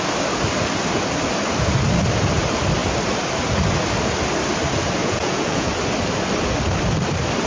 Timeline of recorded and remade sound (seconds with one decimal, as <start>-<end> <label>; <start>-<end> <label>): 0.0-5.0 recorded; 5.0-5.7 remade; 5.7-7.5 recorded